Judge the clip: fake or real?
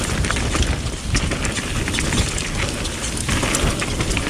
real